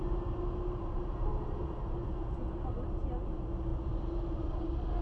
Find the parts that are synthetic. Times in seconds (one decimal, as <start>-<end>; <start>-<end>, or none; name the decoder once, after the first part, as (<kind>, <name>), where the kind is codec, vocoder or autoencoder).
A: none